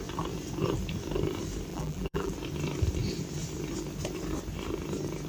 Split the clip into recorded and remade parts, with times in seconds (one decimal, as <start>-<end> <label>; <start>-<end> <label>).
0.0-1.7 recorded; 1.7-2.3 remade; 2.3-5.3 recorded

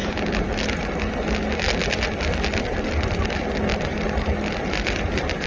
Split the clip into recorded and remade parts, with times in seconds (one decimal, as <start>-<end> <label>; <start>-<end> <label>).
0.0-3.7 recorded; 3.7-5.5 remade

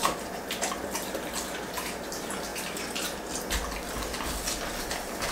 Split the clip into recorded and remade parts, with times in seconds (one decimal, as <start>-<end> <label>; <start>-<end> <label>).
0.0-5.3 recorded

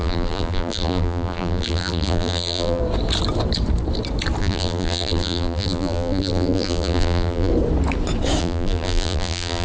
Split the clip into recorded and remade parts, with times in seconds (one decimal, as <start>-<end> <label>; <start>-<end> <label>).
0.0-2.8 remade; 2.8-4.4 recorded; 4.4-7.5 remade; 7.5-8.4 recorded; 8.4-9.6 remade

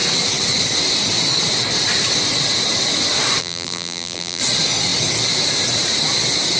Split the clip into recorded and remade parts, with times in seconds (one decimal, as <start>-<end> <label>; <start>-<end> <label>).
0.0-3.4 recorded; 3.4-4.4 remade; 4.4-6.6 recorded

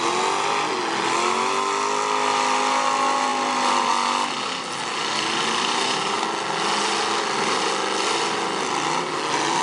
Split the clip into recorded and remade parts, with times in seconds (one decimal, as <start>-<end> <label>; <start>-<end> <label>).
0.0-9.6 recorded